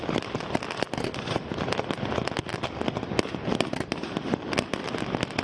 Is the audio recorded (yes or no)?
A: yes